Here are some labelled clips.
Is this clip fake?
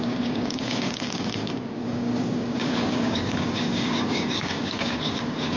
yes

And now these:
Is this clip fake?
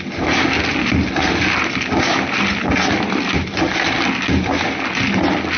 no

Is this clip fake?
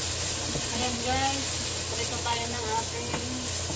no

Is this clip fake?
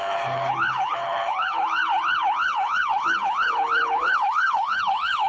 yes